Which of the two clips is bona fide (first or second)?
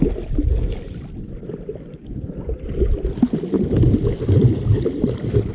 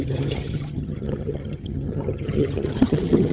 first